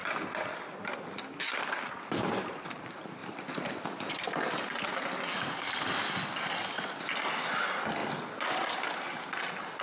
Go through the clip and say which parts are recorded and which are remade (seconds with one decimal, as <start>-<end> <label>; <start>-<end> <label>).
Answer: 0.0-9.8 recorded